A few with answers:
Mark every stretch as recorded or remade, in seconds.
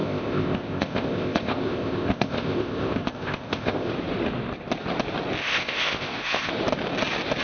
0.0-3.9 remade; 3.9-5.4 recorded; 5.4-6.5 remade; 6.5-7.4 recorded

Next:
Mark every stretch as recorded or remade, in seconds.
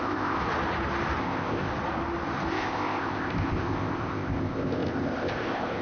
0.0-0.4 remade; 0.4-1.2 recorded; 1.2-1.7 remade; 1.7-2.5 recorded; 2.5-5.8 remade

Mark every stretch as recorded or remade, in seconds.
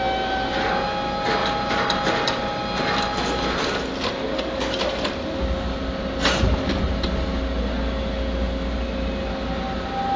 0.0-10.2 recorded